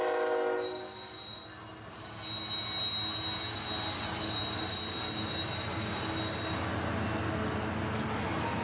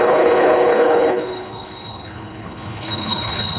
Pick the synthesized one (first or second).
second